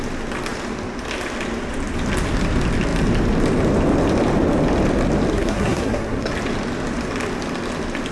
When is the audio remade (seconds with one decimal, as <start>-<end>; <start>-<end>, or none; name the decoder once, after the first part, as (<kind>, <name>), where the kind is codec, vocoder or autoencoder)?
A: 5.3-6.3 (codec, SNAC)